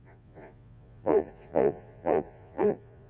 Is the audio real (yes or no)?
no